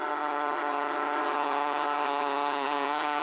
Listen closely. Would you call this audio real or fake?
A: fake